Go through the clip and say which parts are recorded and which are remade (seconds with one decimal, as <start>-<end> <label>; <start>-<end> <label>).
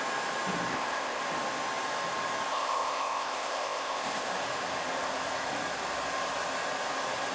0.0-0.7 recorded; 0.7-1.2 remade; 1.2-2.5 recorded; 2.5-4.3 remade; 4.3-7.3 recorded